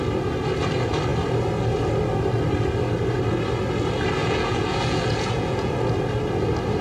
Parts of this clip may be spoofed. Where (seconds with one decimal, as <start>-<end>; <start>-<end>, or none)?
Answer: 4.2-5.7